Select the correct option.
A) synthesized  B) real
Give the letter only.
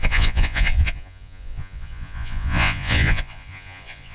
A